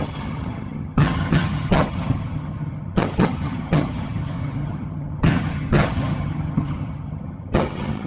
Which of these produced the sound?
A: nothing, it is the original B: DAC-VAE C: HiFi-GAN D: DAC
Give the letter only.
C